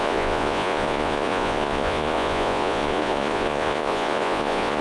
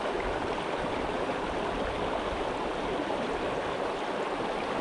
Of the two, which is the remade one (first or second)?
first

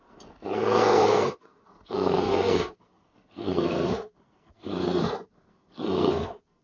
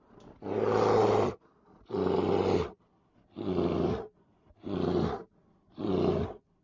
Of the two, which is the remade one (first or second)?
first